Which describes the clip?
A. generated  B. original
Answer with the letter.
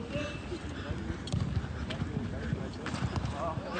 B